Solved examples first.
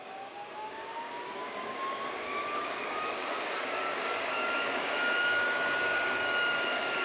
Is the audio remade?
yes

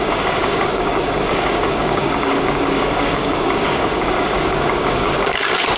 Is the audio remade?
yes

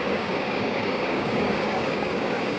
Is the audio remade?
yes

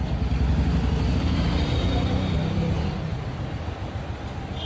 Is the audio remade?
no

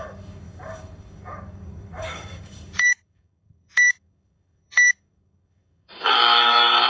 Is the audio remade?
yes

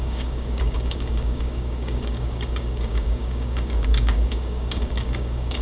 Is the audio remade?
yes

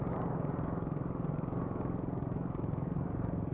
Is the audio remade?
yes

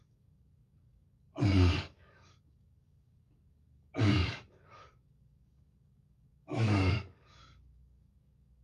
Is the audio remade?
yes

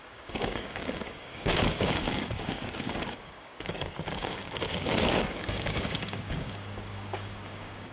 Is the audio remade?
yes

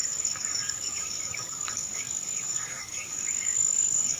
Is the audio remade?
yes